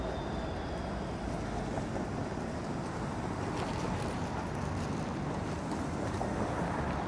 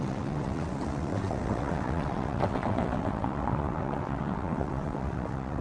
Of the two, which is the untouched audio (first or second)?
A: first